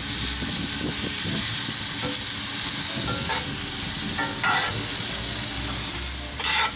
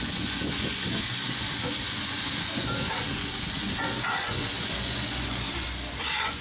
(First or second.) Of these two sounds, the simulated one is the second